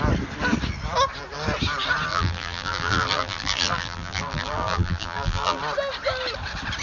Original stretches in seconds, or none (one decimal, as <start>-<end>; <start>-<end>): 0.0-2.1; 5.6-6.8